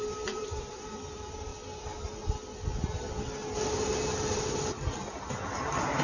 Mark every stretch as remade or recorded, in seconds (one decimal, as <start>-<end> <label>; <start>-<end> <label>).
0.0-1.5 remade; 1.5-5.1 recorded; 5.1-6.0 remade